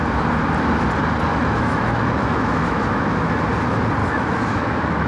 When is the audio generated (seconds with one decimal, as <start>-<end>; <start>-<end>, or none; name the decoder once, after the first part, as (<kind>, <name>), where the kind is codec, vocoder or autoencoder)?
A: 1.3-3.4 (autoencoder, DAC-VAE); 4.0-5.1